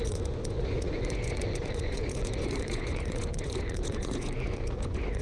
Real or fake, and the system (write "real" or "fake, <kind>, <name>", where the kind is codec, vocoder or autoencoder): fake, vocoder, Vocos